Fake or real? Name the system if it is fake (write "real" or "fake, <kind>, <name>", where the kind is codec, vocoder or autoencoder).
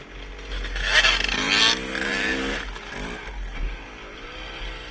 real